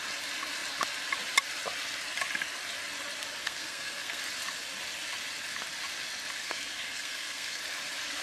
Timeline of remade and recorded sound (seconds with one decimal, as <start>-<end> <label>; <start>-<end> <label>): 0.0-3.4 recorded; 3.4-4.2 remade; 4.2-6.4 recorded; 6.4-7.6 remade; 7.6-8.2 recorded